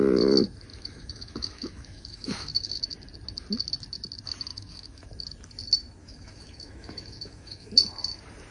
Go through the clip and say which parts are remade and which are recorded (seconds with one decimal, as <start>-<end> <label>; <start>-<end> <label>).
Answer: 0.0-0.7 recorded; 0.7-2.8 remade; 2.8-4.5 recorded; 4.5-5.1 remade; 5.1-6.0 recorded; 6.0-7.7 remade; 7.7-8.5 recorded